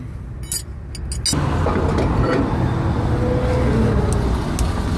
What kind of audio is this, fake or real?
real